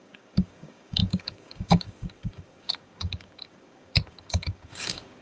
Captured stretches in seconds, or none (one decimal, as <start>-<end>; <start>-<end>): none